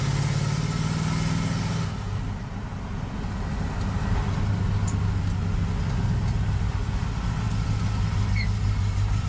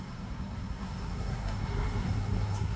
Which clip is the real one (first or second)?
first